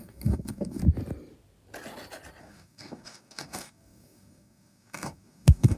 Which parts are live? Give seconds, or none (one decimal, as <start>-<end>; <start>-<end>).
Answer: 0.8-2.4